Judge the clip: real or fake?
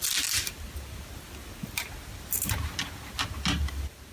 real